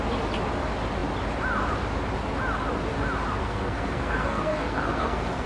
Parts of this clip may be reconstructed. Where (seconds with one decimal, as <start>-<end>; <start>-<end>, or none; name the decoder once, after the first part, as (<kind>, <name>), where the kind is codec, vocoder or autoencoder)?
3.4-5.5 (codec, SNAC)